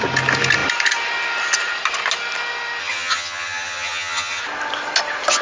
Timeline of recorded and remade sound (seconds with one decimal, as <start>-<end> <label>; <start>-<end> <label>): 0.0-2.8 recorded; 2.8-4.4 remade; 4.4-5.4 recorded